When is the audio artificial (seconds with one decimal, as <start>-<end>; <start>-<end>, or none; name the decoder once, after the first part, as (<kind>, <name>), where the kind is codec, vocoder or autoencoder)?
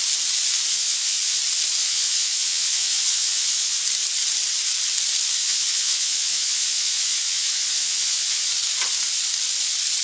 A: 0.7-1.4 (vocoder, Vocos); 1.8-3.8; 5.4-8.5